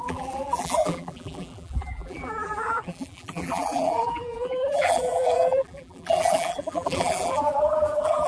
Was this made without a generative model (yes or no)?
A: no